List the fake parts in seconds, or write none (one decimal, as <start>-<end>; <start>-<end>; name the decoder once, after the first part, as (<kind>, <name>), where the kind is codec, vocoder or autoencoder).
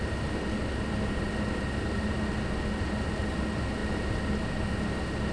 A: none